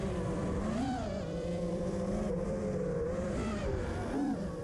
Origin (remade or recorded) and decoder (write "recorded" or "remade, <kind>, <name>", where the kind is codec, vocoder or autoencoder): remade, vocoder, BigVGAN v2